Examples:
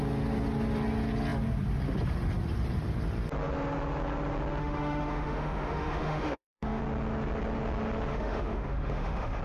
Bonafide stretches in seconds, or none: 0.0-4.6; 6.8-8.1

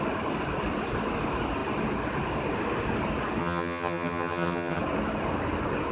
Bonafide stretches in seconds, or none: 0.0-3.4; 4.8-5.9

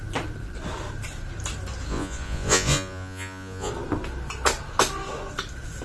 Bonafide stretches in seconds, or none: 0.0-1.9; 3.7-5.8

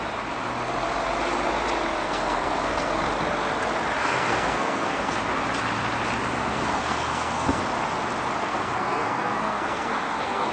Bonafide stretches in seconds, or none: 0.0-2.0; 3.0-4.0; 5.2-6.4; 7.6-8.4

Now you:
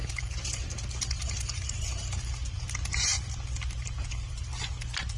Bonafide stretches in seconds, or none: 0.0-5.2

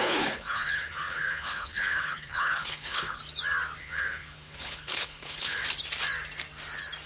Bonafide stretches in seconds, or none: 3.2-3.8; 5.6-7.1

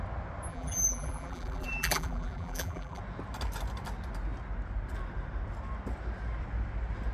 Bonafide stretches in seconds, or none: 0.0-0.5; 3.0-7.1